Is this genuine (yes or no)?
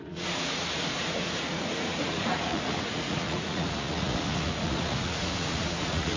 no